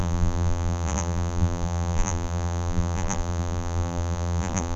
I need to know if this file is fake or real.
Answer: fake